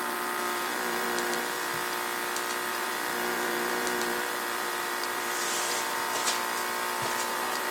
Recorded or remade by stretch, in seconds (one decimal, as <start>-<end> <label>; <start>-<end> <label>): 0.0-1.7 remade; 1.7-2.7 recorded; 2.7-6.2 remade; 6.2-7.3 recorded; 7.3-7.7 remade